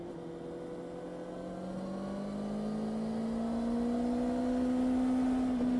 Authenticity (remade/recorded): recorded